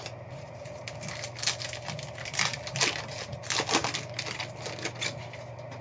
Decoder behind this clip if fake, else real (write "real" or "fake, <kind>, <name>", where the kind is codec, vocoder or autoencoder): real